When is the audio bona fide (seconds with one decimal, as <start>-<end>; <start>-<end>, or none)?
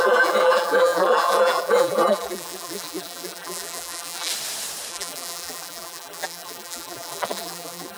4.3-4.9